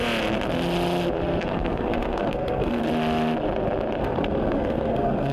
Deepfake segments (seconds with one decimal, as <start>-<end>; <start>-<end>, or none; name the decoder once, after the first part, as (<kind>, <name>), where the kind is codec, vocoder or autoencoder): 1.4-2.8 (codec, SNAC); 4.0-5.3